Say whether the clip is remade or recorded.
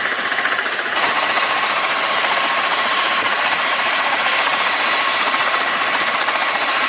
remade